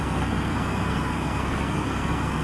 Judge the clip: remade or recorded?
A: remade